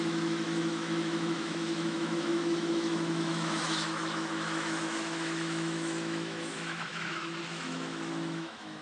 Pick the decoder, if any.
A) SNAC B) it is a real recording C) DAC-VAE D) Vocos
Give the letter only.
C